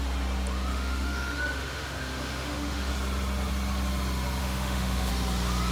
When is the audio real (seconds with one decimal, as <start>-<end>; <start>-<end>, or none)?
0.0-0.7; 2.9-4.4; 5.1-5.7